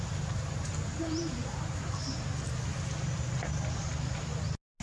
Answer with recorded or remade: recorded